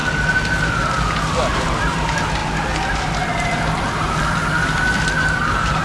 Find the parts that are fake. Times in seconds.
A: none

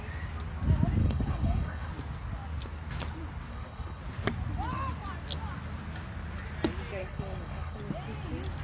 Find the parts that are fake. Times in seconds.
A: 1.0-1.9 (codec, HILCodec); 3.5-4.0; 7.0-7.8

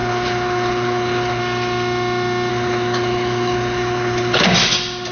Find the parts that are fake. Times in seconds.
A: 0.0-1.4 (codec, HILCodec); 2.5-4.4

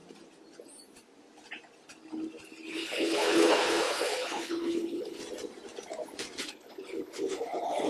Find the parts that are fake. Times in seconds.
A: 2.7-5.2 (codec, HILCodec); 6.4-7.9

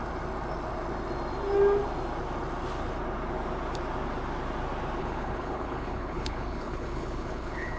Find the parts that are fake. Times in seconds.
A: 5.0-7.8 (codec, HILCodec)